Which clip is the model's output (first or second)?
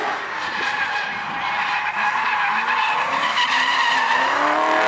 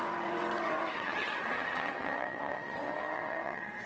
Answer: second